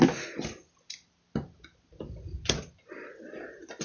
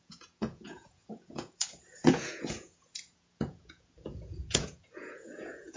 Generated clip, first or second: second